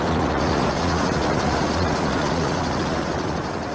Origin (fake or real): fake